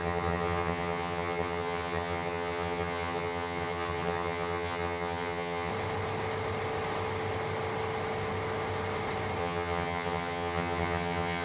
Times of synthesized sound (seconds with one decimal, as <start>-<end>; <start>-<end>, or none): 0.0-5.7; 9.4-11.4